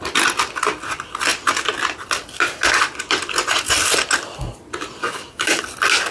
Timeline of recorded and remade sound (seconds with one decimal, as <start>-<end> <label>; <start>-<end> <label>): 0.0-5.0 recorded; 5.0-5.6 remade; 5.6-6.1 recorded